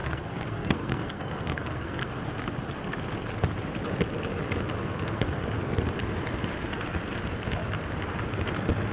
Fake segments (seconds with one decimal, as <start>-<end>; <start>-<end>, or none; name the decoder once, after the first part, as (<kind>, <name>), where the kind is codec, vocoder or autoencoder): 0.0-2.1 (codec, SNAC); 4.8-5.4